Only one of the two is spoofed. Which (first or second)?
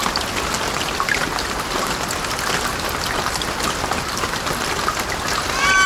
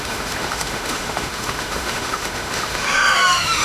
second